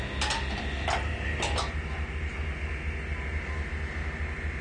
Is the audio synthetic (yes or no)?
no